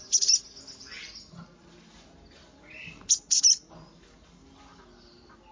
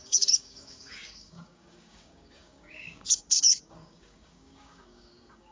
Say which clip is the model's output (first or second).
second